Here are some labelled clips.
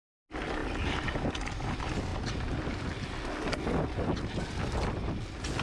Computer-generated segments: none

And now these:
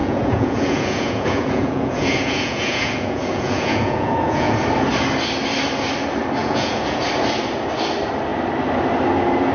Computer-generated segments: 0.0-4.6; 6.4-7.0

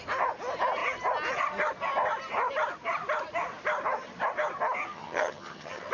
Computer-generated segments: 4.9-5.9

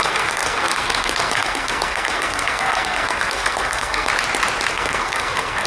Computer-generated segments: 0.0-4.1; 4.7-5.7

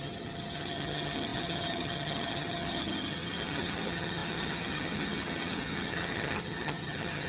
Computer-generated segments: 0.0-7.3